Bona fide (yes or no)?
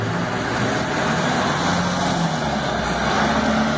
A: yes